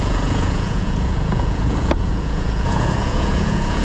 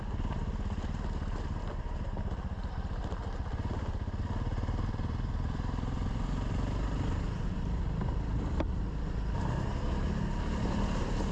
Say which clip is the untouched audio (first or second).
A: second